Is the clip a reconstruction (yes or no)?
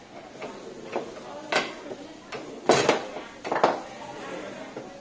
no